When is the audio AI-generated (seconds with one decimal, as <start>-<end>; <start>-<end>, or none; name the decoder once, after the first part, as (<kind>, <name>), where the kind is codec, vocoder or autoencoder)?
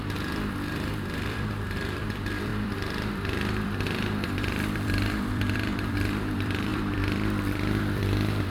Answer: 0.0-8.5 (vocoder, BigVGAN v2)